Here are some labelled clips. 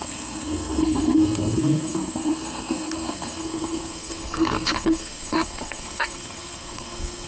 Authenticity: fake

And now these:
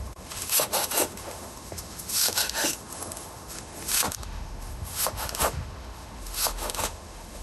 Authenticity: fake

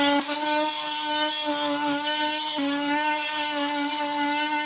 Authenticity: fake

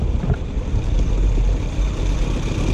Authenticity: real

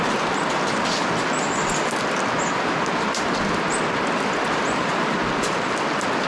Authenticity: real